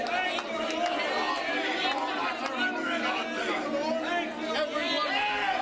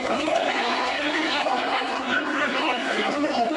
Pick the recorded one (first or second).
first